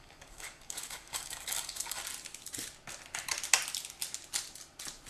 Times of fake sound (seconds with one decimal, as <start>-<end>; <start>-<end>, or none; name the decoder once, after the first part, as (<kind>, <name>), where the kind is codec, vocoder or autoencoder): 0.0-2.0 (codec, DAC)

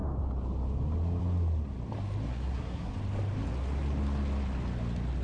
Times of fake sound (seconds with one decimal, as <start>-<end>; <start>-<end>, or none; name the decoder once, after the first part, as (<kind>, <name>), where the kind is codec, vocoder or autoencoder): 2.3-2.9 (codec, SNAC)

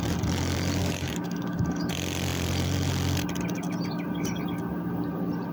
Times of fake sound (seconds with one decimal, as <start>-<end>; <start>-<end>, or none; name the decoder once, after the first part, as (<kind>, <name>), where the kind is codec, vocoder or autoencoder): 0.8-1.8 (codec, DAC)

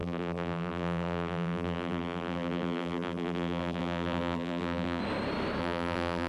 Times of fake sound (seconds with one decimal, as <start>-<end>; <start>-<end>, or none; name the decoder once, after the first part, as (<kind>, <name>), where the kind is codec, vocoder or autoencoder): 0.0-5.0 (vocoder, BigVGAN v2); 5.6-6.3

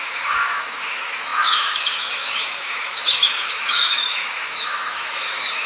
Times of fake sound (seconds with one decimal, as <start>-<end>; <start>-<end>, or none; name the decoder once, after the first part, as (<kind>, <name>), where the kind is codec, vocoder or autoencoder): 0.0-5.7 (autoencoder, DAC-VAE)